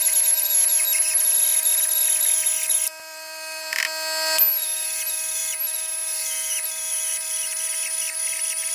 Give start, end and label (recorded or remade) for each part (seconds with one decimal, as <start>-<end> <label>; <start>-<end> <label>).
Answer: 0.0-2.9 recorded; 2.9-3.8 remade; 3.8-8.7 recorded